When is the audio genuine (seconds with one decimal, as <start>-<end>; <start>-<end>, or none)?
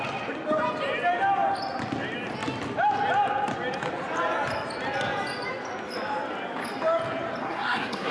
0.0-7.4